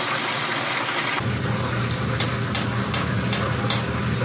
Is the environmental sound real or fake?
real